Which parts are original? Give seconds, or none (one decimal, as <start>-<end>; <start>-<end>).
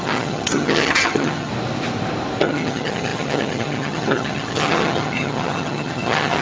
1.5-2.4